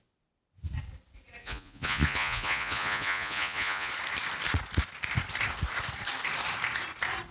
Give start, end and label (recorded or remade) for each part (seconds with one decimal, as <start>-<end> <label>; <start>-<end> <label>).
0.0-1.4 recorded; 1.4-3.9 remade; 3.9-7.3 recorded